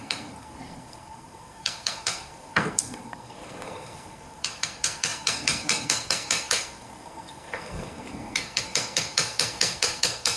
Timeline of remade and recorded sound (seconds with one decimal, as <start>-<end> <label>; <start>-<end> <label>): 0.0-10.4 remade